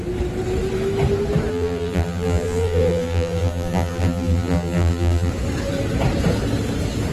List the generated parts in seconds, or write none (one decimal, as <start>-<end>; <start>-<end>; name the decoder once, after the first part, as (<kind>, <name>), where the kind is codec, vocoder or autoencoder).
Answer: 1.5-5.3 (vocoder, BigVGAN v2)